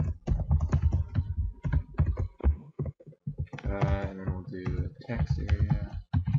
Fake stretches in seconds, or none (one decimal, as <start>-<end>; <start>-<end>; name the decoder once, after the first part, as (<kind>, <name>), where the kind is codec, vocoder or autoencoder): 2.4-3.1 (autoencoder, DAC-VAE)